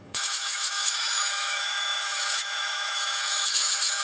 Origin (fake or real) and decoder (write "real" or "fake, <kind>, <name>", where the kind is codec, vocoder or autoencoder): fake, autoencoder, DAC-VAE